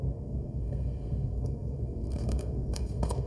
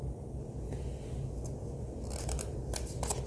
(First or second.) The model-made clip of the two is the first